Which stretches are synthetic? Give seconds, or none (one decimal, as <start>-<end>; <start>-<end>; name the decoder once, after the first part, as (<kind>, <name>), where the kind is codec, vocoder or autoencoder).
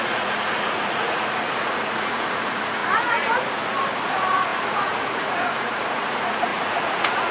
0.0-7.3 (vocoder, Vocos)